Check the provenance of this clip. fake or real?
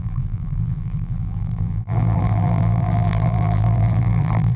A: fake